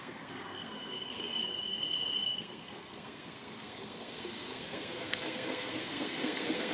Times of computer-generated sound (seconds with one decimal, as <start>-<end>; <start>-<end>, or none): 0.0-6.7